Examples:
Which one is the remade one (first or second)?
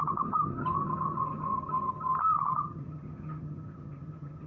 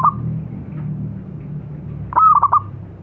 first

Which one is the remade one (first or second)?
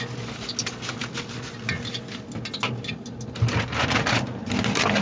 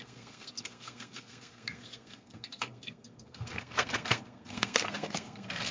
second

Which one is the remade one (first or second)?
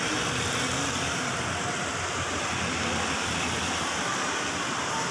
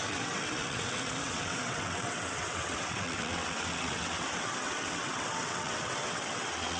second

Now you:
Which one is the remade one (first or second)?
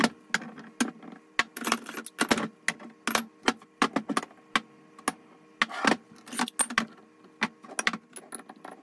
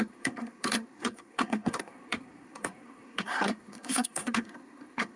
second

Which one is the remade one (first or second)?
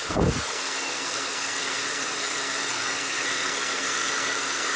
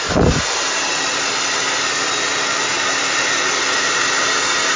first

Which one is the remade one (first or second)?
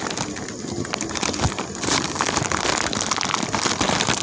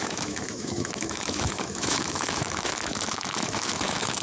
second